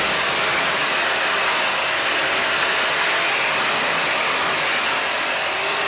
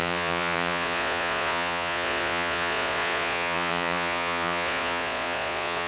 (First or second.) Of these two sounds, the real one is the first